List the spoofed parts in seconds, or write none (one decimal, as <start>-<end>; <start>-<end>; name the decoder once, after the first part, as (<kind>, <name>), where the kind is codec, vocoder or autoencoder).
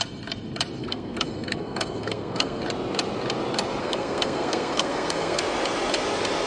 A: 0.8-2.6 (codec, SNAC); 3.8-5.4